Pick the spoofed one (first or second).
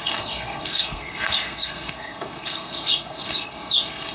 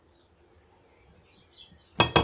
first